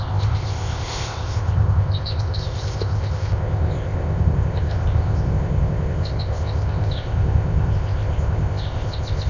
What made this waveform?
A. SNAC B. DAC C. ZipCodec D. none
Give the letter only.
C